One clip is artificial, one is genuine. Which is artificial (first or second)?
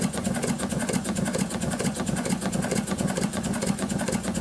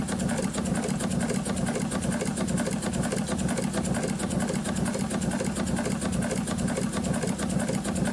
first